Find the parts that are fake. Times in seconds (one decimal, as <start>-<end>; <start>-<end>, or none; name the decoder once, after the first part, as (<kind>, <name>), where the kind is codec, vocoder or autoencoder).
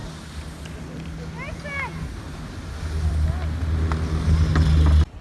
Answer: none